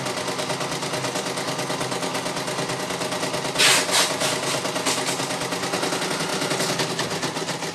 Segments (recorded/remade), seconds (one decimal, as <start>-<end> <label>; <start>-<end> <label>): 0.0-7.7 recorded